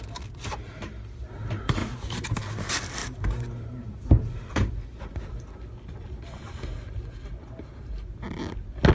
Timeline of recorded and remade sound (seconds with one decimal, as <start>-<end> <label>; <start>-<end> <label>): 0.0-1.8 recorded; 1.8-2.4 remade; 2.4-3.0 recorded; 3.0-4.7 remade; 4.7-8.9 recorded